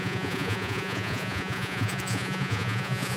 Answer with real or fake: fake